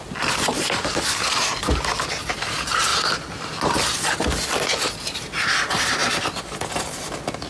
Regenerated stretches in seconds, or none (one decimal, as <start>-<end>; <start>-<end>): none